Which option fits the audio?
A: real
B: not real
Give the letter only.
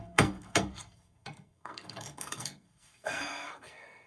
B